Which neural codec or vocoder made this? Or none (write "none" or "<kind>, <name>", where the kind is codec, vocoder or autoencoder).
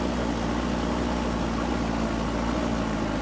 none